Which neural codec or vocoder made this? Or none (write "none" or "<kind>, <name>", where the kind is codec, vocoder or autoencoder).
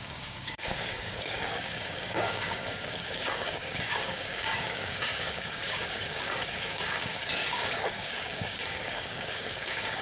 codec, DAC